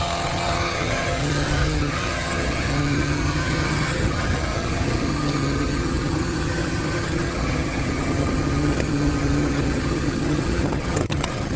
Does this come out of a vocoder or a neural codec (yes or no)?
yes